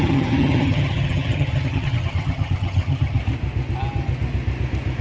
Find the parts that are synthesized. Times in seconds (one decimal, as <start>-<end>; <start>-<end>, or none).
0.0-3.2